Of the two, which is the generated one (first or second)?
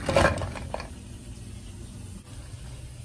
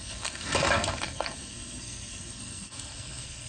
second